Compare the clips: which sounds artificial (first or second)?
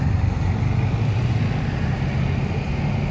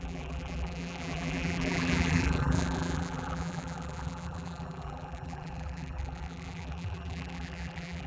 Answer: second